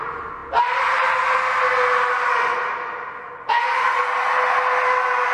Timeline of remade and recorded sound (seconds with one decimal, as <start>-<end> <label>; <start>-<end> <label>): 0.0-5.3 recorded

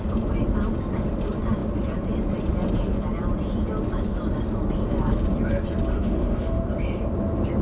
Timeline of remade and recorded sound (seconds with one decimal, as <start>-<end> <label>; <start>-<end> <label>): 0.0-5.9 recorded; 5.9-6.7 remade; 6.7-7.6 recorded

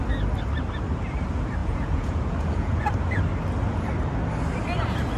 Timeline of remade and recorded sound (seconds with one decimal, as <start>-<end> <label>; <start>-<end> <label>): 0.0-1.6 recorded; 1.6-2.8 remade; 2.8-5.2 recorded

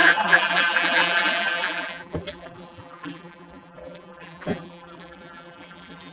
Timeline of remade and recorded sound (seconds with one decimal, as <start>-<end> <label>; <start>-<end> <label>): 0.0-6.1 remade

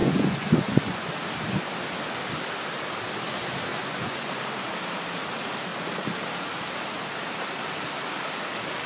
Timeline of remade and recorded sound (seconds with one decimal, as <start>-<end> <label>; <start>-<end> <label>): 0.0-1.1 remade; 1.1-3.7 recorded; 3.7-4.4 remade; 4.4-8.9 recorded